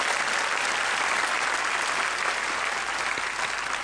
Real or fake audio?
real